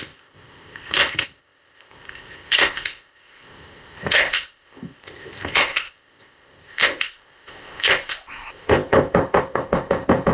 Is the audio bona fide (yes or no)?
no